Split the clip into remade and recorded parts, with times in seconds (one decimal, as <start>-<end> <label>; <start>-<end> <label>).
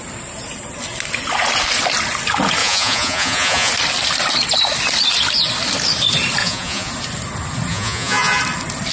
0.0-2.6 recorded; 2.6-3.7 remade; 3.7-6.4 recorded; 6.4-6.9 remade; 6.9-7.7 recorded; 7.7-8.4 remade; 8.4-8.9 recorded